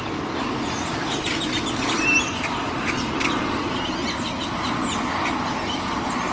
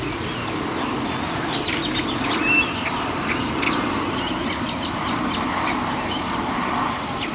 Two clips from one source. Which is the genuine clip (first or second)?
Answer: first